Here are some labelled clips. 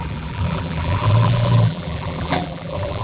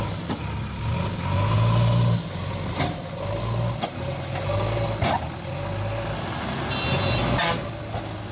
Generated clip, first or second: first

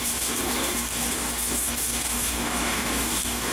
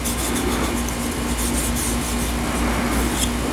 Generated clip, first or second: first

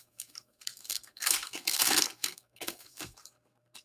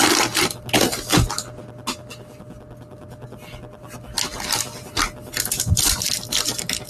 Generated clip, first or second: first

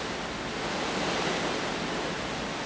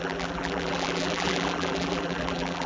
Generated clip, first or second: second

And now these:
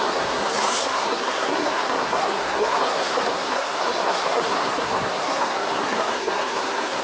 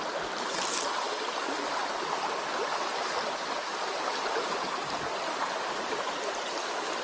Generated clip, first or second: first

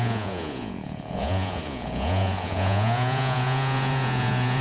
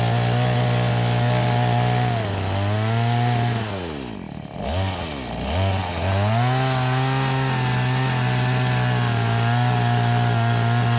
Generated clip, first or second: first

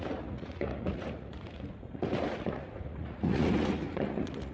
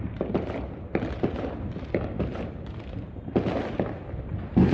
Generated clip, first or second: first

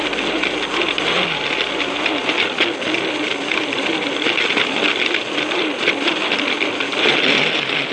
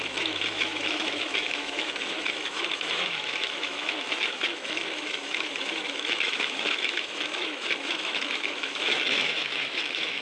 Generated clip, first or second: second